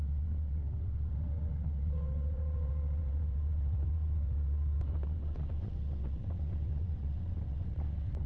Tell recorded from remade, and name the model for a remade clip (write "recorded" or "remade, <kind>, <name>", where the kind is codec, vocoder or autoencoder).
remade, vocoder, WaveNeXt